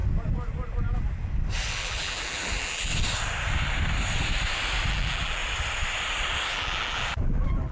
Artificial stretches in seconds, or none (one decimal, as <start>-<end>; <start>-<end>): 1.7-2.9; 4.9-5.4; 6.5-7.7